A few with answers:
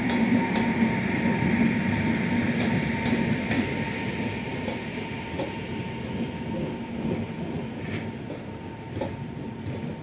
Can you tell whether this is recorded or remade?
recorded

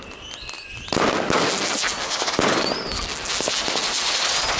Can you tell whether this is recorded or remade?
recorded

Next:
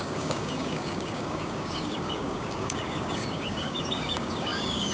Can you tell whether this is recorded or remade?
remade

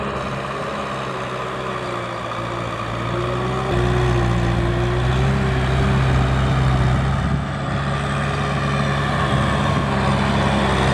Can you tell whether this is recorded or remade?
recorded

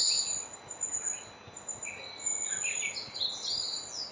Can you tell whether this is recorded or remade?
recorded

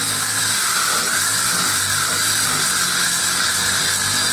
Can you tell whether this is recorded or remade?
recorded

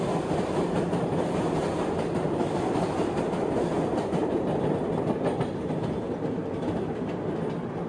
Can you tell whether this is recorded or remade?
recorded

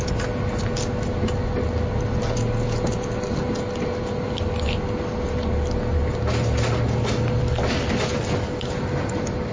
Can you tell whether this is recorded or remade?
recorded